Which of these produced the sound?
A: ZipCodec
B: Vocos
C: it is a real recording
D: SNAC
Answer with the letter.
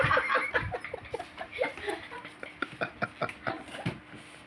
C